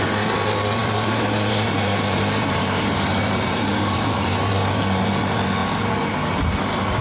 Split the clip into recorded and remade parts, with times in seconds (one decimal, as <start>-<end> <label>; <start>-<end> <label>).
0.0-0.8 recorded; 0.8-4.5 remade; 4.5-5.6 recorded; 5.6-6.1 remade; 6.1-7.0 recorded